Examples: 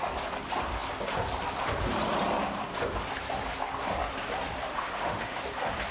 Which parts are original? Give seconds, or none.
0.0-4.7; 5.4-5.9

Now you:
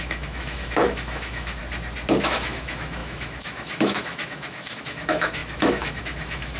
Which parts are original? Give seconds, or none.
1.6-2.2

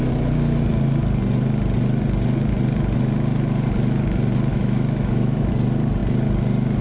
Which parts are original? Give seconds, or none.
0.0-4.5; 5.5-6.8

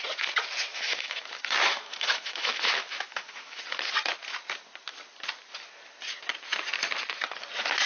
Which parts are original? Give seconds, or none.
0.0-0.7; 3.6-7.9

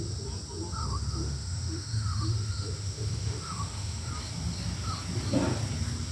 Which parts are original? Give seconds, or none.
0.0-0.8; 4.1-6.1

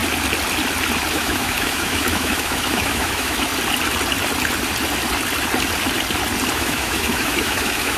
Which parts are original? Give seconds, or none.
0.0-1.1; 3.5-6.5

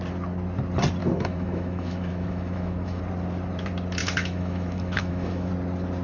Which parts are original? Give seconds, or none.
0.0-1.0; 3.0-4.0; 5.5-6.0